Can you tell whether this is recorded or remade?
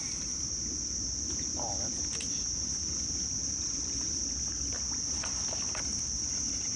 recorded